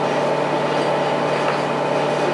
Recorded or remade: recorded